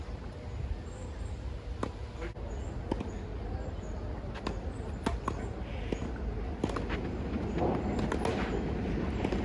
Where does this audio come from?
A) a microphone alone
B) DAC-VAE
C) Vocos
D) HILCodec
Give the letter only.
A